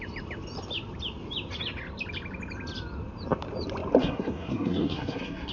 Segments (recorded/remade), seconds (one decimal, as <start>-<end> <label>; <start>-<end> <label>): 0.0-4.0 recorded; 4.0-5.5 remade